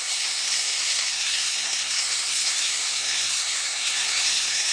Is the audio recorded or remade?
remade